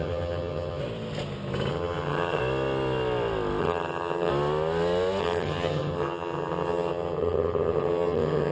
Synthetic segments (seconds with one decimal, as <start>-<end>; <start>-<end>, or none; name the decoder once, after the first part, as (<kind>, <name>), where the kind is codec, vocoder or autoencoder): 0.0-0.8 (vocoder, HiFi-GAN); 1.7-2.4; 3.6-4.3; 5.2-8.5